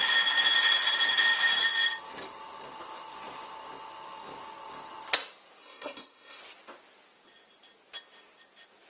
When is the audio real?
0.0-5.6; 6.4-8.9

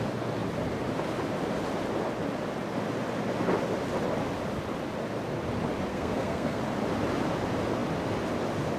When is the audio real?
0.0-5.9; 6.6-8.8

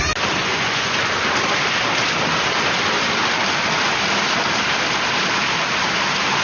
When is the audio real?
0.0-0.4; 1.1-6.4

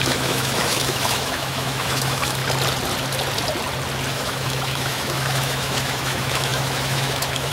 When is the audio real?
2.4-4.1